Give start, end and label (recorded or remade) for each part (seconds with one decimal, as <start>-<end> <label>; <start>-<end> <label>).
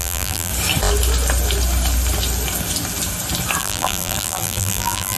0.0-0.5 remade; 0.5-3.6 recorded; 3.6-5.2 remade